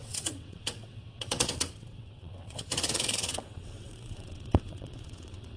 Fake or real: fake